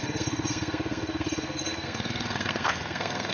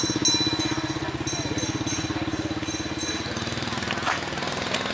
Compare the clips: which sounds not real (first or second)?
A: first